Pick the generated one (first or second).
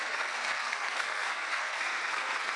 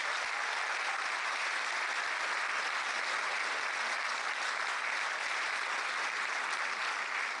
first